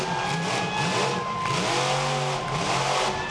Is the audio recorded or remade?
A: recorded